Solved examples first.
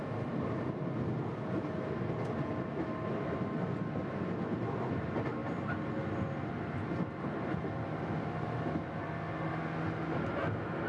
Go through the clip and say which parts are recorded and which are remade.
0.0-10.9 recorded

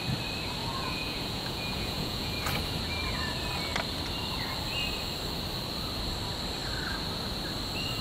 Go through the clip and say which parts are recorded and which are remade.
0.0-0.6 recorded; 0.6-2.3 remade; 2.3-8.0 recorded

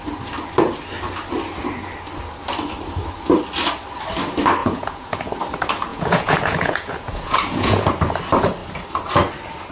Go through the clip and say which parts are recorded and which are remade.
0.0-4.6 recorded; 4.6-5.3 remade; 5.3-5.9 recorded; 5.9-7.9 remade; 7.9-9.7 recorded

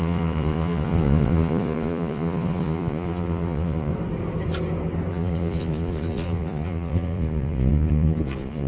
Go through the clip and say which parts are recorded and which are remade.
0.0-3.9 remade; 3.9-5.1 recorded; 5.1-8.7 remade

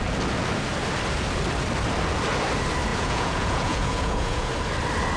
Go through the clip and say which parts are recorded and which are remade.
0.0-2.9 recorded; 2.9-4.5 remade; 4.5-5.2 recorded